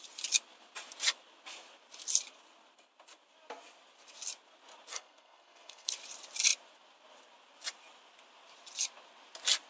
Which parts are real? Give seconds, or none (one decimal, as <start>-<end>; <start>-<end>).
0.0-4.9; 5.9-9.7